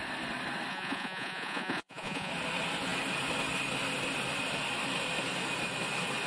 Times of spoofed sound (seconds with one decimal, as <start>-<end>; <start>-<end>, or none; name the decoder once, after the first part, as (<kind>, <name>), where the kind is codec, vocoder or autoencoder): 0.7-2.3 (vocoder, Vocos)